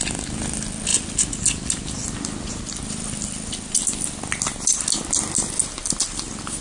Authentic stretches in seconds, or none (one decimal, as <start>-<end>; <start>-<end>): 0.0-6.6